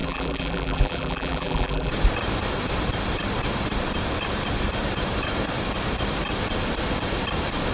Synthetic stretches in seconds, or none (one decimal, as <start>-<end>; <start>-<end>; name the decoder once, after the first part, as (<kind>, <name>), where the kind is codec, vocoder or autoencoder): 0.0-1.9 (vocoder, BigVGAN v2)